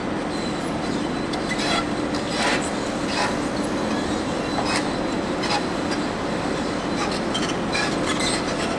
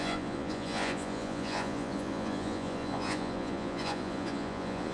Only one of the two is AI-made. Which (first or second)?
second